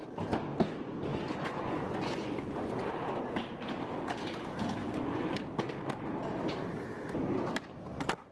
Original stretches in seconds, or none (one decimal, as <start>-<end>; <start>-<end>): 0.0-1.1; 2.7-4.8; 5.3-8.3